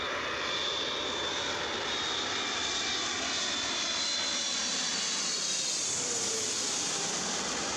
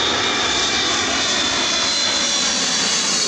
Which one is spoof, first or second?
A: first